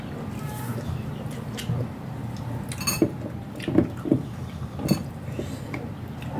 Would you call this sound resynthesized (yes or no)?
no